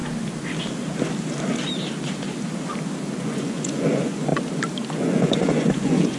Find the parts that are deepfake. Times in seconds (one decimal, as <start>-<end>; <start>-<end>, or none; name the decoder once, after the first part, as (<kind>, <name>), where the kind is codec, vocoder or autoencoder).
3.2-4.3 (vocoder, Vocos); 4.9-6.2